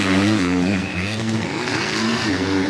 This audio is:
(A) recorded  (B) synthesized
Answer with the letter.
B